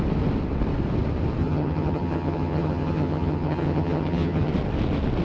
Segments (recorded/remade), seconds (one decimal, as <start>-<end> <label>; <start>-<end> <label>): 0.0-1.4 recorded; 1.4-4.5 remade; 4.5-5.2 recorded